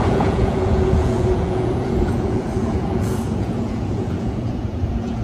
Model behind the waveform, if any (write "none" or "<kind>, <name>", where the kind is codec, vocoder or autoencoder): vocoder, Vocos